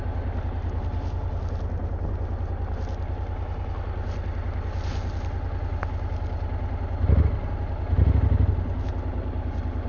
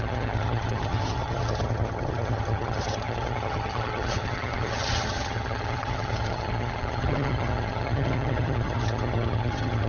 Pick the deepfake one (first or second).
second